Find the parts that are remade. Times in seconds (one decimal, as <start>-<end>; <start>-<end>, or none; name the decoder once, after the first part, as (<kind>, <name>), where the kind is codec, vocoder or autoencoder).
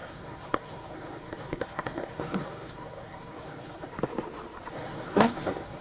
0.0-3.9 (codec, SNAC); 4.7-5.8